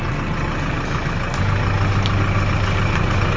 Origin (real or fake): real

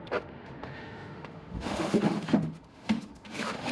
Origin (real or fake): fake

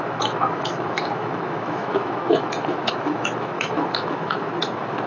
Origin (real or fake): fake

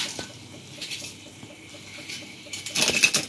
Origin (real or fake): real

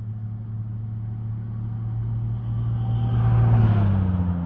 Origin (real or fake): real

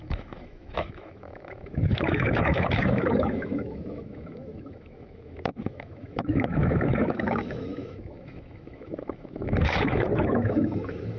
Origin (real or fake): fake